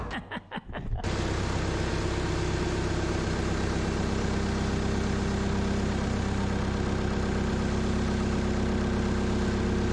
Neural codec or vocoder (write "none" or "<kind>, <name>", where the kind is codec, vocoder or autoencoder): none